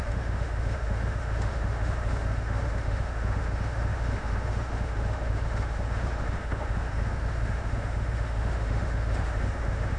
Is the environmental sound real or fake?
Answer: fake